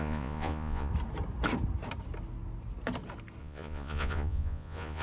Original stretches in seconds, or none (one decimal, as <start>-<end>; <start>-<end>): 0.9-3.4